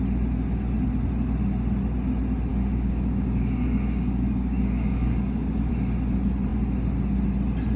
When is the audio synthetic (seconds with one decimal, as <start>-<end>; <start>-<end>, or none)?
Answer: 2.5-5.7